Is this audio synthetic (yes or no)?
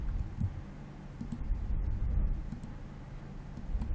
no